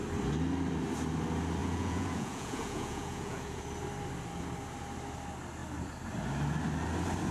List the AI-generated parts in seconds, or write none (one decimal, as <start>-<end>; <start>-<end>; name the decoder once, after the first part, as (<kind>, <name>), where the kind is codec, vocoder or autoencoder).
1.6-3.6 (vocoder, Vocos)